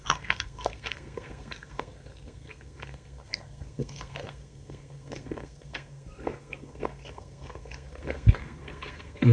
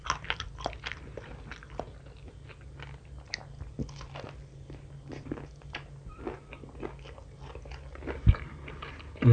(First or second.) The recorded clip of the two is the second